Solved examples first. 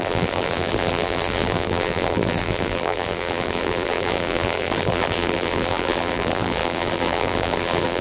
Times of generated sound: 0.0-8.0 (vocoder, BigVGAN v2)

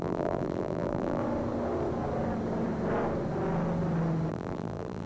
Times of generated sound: 0.0-1.2 (vocoder, BigVGAN v2); 4.3-5.1

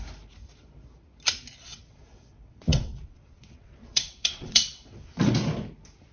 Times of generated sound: 1.6-5.3 (vocoder, WaveNeXt)